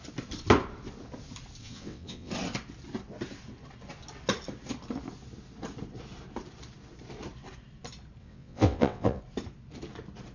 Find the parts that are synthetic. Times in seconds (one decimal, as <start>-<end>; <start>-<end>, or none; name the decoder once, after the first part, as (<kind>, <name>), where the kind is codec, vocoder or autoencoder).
1.6-2.3 (vocoder, WaveNeXt); 8.2-9.2